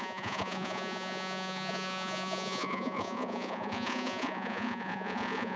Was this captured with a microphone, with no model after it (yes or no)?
no